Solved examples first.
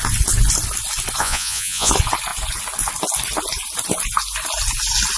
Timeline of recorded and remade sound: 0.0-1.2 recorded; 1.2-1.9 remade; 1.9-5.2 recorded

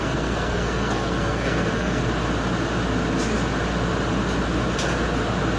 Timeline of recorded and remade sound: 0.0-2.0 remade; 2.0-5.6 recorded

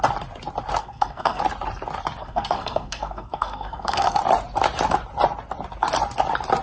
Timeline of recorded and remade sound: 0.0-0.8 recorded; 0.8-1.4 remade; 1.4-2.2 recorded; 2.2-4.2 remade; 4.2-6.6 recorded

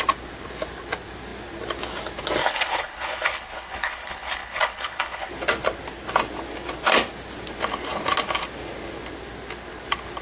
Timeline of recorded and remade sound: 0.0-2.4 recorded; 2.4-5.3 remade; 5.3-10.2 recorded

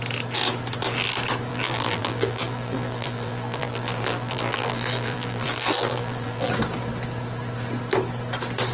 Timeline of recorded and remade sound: 0.0-1.5 recorded; 1.5-6.5 remade; 6.5-8.7 recorded

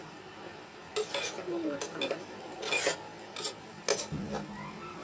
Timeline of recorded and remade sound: 0.0-5.0 recorded